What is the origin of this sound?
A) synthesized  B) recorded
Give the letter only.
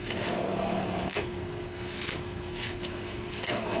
A